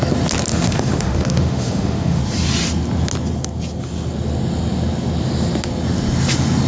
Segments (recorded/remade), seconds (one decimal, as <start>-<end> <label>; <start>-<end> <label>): 0.0-0.5 recorded; 0.5-2.2 remade; 2.2-6.7 recorded